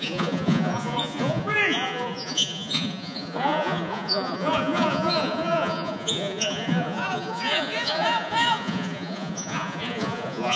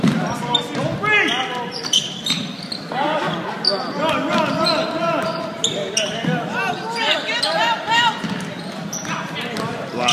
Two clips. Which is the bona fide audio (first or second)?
second